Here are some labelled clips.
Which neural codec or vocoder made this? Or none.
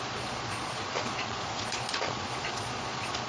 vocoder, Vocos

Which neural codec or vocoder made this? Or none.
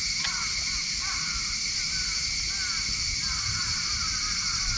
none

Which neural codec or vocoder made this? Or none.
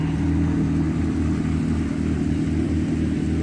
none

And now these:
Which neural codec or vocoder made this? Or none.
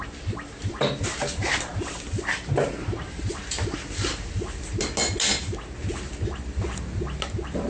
none